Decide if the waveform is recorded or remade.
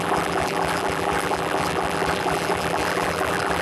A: remade